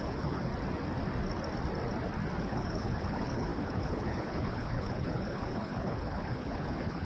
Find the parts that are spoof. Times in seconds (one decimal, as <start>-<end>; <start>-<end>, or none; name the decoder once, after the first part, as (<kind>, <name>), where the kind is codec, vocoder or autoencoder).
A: 0.0-0.5 (codec, HILCodec); 2.4-7.0